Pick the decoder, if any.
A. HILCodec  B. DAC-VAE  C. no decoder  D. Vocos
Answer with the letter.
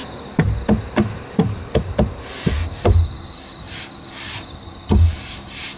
C